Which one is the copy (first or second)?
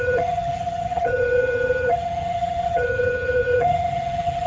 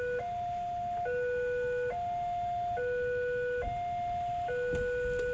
first